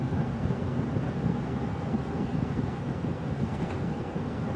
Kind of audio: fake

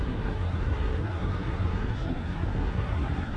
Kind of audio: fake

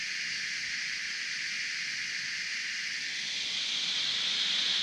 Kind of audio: real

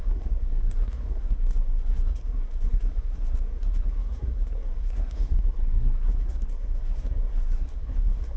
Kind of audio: fake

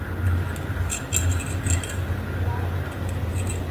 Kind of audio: real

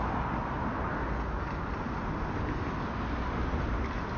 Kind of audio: real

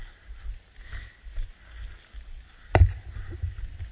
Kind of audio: real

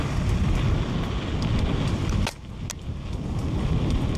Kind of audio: real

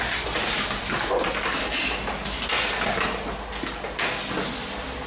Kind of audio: real